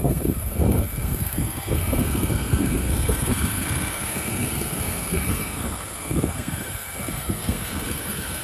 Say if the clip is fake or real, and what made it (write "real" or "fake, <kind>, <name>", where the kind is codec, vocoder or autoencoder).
fake, codec, SNAC